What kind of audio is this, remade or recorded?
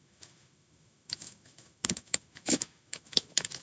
remade